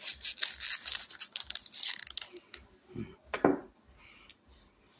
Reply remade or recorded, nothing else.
recorded